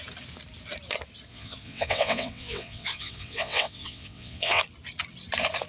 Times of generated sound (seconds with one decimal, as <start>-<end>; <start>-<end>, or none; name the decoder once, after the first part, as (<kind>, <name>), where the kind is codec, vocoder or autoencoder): 1.3-4.6 (vocoder, WaveNeXt)